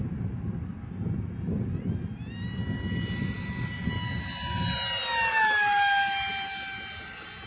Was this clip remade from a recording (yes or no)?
no